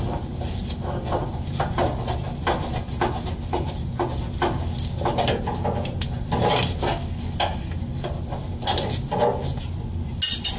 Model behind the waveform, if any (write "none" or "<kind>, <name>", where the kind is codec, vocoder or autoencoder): none